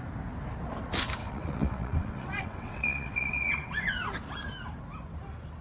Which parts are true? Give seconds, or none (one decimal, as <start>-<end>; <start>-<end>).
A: 0.0-1.2; 3.9-5.6